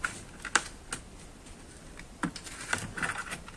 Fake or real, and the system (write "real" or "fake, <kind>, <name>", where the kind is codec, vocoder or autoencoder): real